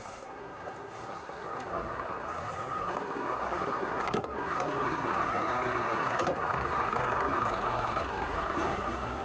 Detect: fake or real fake